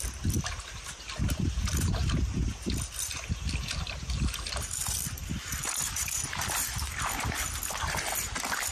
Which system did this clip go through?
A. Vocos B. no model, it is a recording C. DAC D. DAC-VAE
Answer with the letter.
B